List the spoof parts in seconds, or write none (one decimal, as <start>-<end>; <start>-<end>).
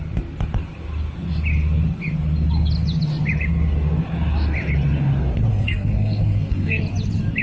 5.5-6.8